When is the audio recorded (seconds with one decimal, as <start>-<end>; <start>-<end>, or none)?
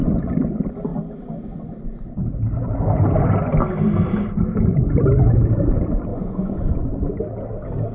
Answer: 0.0-6.1; 7.0-7.9